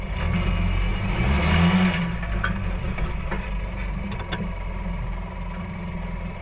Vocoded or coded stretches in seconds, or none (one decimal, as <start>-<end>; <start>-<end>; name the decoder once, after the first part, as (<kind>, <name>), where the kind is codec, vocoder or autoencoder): 0.9-1.4 (vocoder, BigVGAN v2)